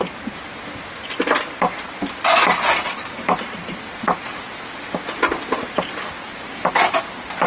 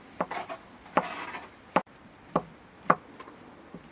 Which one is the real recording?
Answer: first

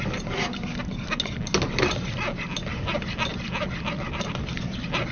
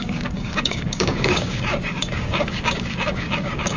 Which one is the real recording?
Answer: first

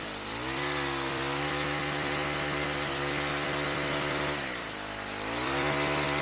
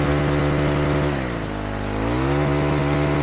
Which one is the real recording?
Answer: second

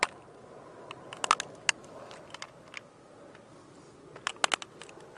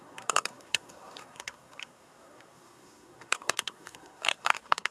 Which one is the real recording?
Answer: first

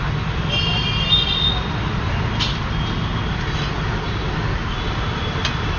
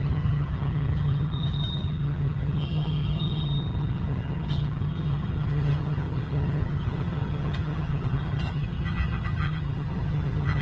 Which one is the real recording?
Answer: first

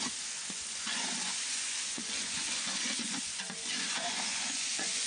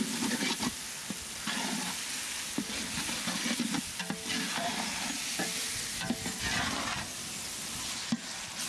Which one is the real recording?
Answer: second